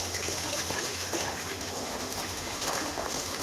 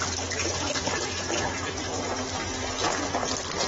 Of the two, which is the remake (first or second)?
first